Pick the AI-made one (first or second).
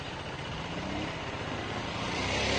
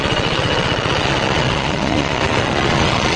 second